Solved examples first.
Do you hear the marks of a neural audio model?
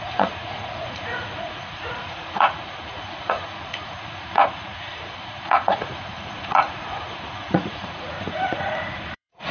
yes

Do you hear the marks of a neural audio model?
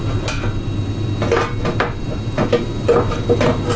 no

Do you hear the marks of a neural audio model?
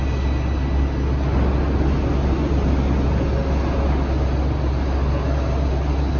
no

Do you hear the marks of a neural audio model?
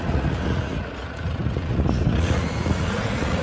yes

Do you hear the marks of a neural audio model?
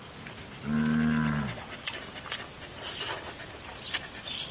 no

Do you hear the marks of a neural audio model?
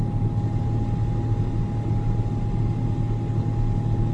no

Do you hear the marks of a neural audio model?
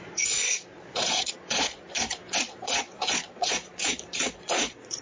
yes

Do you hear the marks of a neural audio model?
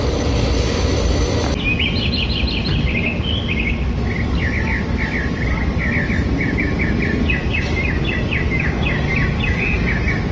no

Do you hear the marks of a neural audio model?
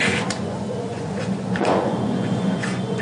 yes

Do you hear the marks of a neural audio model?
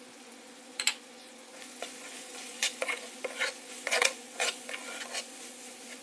yes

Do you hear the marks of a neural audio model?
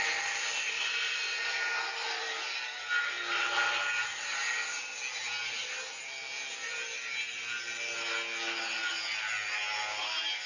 no